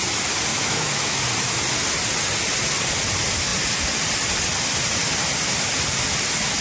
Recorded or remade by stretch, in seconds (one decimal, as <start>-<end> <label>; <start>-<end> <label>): 0.0-0.5 recorded; 0.5-1.2 remade; 1.2-6.6 recorded